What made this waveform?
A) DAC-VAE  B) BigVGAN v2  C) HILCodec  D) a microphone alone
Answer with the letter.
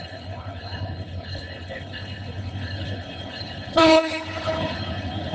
C